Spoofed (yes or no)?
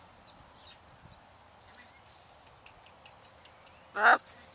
no